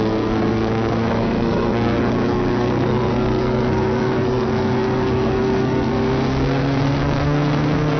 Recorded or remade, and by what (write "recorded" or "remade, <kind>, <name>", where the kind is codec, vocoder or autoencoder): remade, codec, SNAC